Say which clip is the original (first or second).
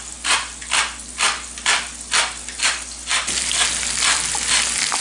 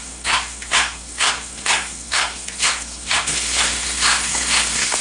first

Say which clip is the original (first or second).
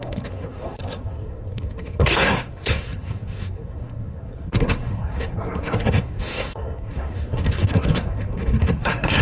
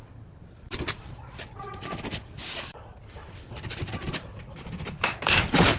second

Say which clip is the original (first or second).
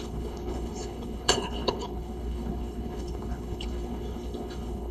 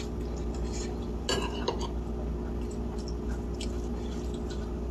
second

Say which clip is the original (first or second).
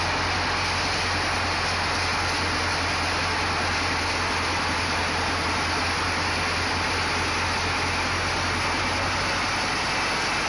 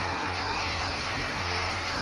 first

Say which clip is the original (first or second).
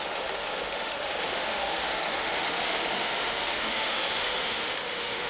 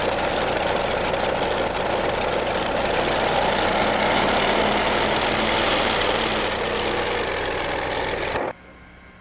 second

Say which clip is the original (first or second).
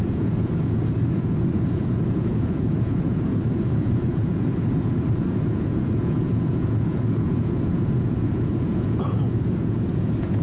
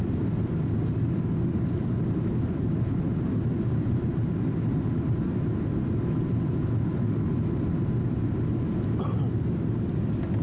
second